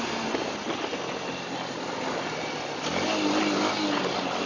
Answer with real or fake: real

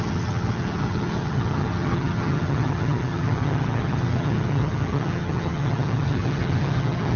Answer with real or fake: fake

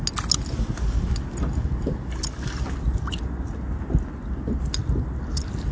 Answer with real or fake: real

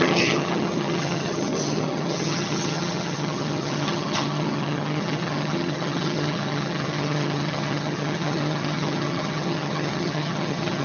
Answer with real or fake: fake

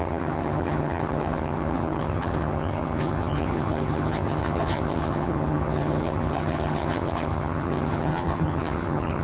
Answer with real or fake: fake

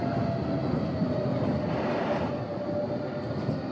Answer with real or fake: real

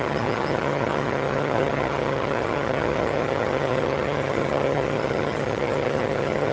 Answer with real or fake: fake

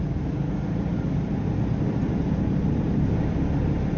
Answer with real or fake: real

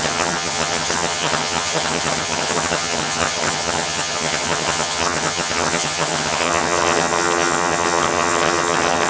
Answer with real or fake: fake